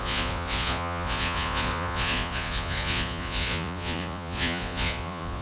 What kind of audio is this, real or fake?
fake